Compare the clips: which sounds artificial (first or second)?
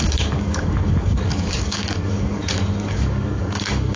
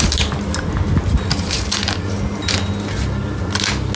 first